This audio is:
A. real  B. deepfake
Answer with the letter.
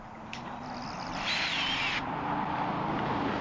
A